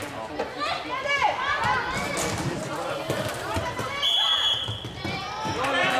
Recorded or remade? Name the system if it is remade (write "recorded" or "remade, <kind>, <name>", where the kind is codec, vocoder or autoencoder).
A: recorded